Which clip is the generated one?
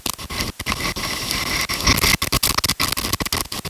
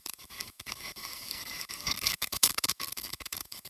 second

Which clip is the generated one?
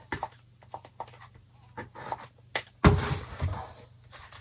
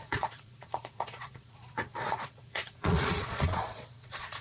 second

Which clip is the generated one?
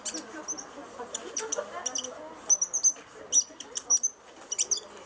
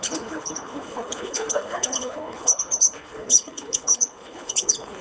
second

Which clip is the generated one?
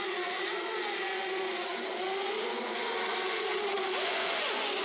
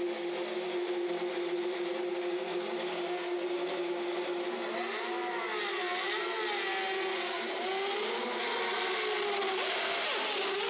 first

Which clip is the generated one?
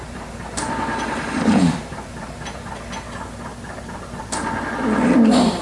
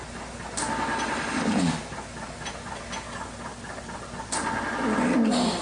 first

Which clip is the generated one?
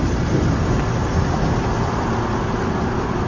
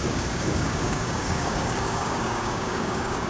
second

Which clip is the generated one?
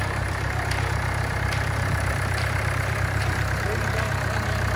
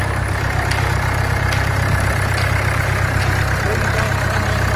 first